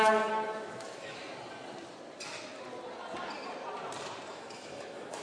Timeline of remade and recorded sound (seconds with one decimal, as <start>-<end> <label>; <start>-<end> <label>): 0.0-1.2 remade; 1.2-4.3 recorded; 4.3-5.2 remade